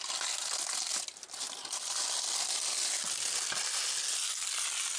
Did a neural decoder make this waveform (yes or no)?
no